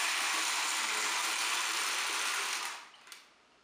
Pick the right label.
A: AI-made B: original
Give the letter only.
B